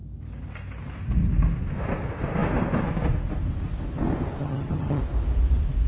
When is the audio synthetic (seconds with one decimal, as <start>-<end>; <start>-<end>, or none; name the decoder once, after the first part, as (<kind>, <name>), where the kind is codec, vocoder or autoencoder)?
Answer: 4.4-5.0 (vocoder, HiFi-GAN)